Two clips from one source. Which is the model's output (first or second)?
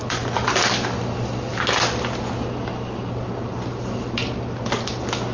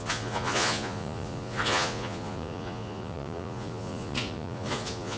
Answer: second